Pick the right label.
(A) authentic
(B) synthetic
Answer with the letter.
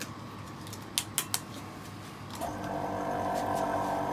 A